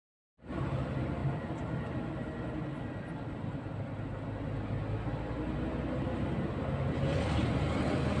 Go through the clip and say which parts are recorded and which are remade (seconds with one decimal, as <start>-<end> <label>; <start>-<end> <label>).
0.0-7.1 recorded; 7.1-8.2 remade